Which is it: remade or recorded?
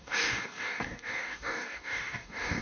remade